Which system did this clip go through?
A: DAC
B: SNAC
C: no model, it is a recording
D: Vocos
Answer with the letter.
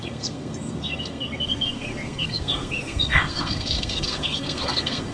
B